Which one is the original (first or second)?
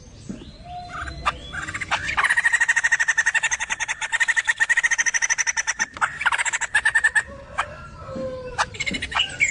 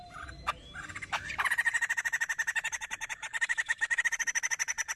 first